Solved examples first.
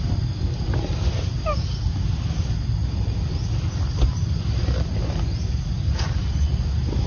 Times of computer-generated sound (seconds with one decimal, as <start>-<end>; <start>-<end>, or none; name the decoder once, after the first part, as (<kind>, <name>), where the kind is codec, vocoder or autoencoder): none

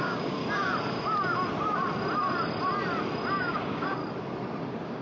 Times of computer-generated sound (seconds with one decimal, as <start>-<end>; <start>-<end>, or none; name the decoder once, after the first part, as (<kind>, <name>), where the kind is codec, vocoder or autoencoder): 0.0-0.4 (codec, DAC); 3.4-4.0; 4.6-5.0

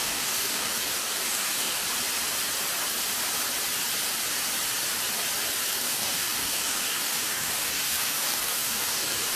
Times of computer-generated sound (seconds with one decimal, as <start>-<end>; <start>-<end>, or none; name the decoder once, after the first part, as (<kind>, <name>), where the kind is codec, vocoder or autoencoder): 0.0-1.8 (codec, DAC); 5.7-9.4

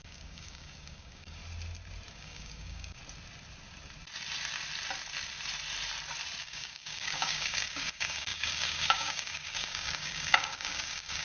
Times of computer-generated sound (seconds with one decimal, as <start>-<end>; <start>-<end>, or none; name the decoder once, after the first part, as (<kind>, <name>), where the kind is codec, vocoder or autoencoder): 0.0-1.4 (codec, DAC); 2.1-3.0; 6.4-11.2

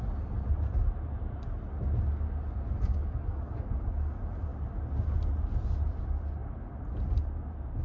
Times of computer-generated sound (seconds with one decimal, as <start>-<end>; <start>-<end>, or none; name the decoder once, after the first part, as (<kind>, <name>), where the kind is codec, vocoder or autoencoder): 2.9-3.7 (codec, DAC)

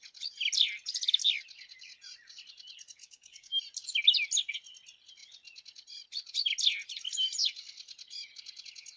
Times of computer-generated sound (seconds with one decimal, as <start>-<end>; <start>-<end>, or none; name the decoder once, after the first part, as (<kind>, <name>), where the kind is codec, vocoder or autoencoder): 3.0-3.6 (codec, DAC)